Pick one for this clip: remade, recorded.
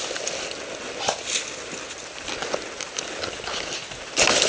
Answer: recorded